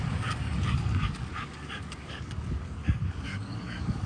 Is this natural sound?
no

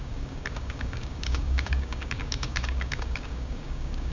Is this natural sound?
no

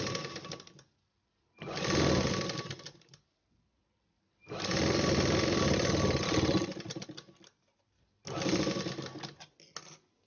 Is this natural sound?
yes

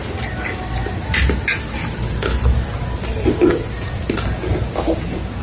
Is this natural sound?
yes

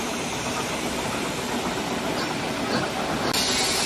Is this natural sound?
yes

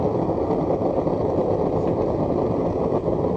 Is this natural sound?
yes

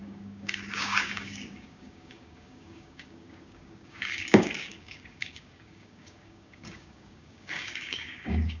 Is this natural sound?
no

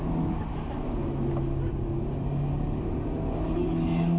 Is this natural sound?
yes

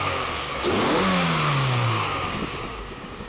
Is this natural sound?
no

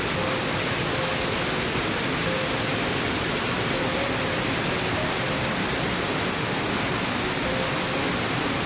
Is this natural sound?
yes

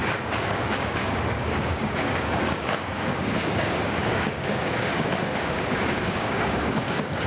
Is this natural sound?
no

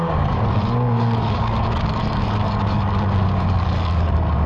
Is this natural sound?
no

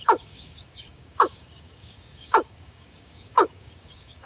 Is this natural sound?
no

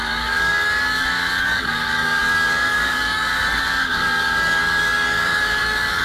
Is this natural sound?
no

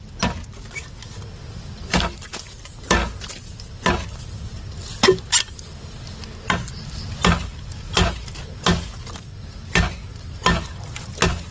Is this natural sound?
yes